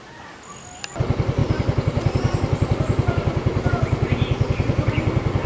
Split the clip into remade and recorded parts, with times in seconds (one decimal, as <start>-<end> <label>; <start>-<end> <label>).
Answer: 0.0-1.4 recorded; 1.4-3.7 remade; 3.7-5.5 recorded